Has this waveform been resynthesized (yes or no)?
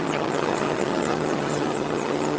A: yes